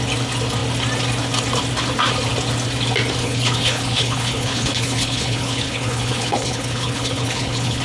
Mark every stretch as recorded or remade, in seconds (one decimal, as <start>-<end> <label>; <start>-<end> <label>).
0.0-3.2 recorded; 3.2-7.8 remade